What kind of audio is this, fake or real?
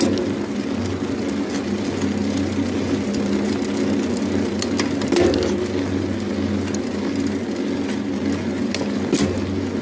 real